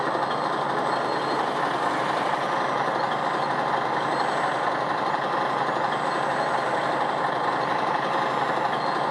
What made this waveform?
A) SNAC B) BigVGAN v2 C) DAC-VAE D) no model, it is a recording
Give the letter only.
D